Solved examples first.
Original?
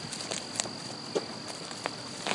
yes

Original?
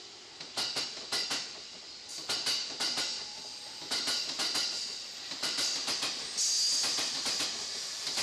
yes